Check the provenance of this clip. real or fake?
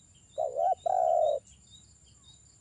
real